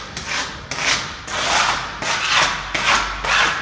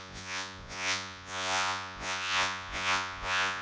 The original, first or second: first